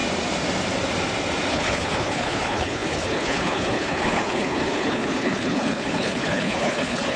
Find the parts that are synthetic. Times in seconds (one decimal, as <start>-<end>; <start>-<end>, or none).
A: 1.5-7.2